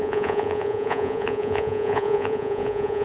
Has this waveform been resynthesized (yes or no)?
yes